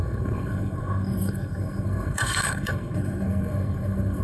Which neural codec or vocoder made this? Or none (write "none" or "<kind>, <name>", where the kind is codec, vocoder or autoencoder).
codec, SNAC